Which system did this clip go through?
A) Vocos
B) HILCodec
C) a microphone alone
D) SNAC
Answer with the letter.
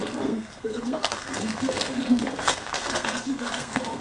D